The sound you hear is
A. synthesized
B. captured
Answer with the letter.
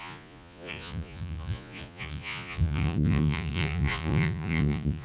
A